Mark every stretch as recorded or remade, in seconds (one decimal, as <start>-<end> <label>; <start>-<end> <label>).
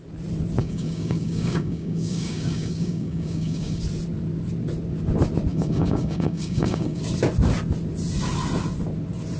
0.0-0.6 recorded; 0.6-3.8 remade; 3.8-5.5 recorded; 5.5-7.0 remade; 7.0-9.4 recorded